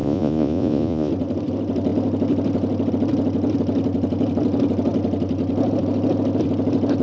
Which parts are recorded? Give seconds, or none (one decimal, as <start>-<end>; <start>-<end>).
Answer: 1.1-7.0